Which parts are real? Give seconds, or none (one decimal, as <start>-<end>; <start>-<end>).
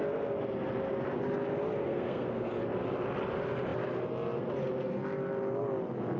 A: 0.0-1.8; 2.5-6.2